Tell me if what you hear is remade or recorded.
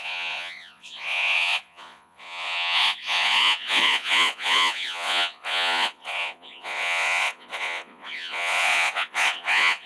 remade